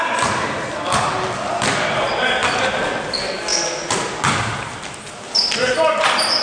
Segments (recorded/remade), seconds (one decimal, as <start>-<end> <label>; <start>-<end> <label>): 0.0-6.4 recorded